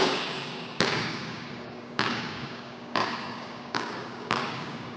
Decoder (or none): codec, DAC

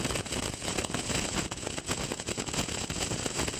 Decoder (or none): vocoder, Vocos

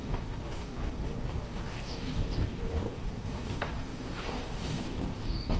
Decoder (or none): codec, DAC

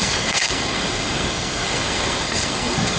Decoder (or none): codec, SNAC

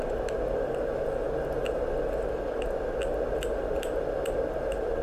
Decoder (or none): none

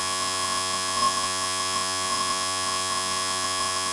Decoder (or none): vocoder, Vocos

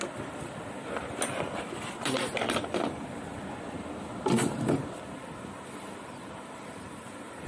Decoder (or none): none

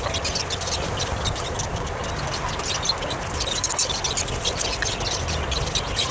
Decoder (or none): none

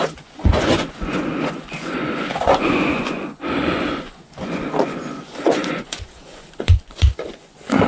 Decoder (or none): vocoder, Vocos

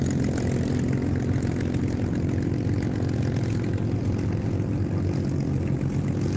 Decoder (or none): none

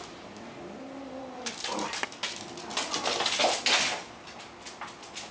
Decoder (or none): none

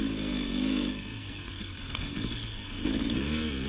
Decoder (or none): codec, SNAC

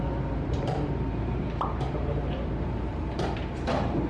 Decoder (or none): vocoder, BigVGAN v2